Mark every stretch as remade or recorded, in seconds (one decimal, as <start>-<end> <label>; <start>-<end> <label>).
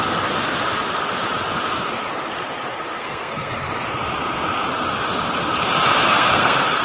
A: 0.0-3.0 recorded; 3.0-3.5 remade; 3.5-6.0 recorded; 6.0-6.8 remade